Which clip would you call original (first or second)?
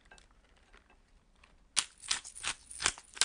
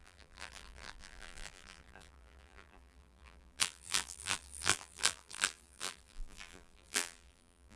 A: first